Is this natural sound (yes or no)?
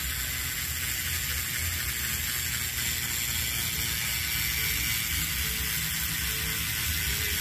yes